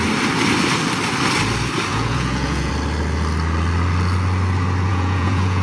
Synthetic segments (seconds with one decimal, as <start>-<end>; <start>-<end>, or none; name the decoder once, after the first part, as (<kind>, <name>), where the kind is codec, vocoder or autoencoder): 1.9-2.7 (vocoder, Vocos); 4.9-5.6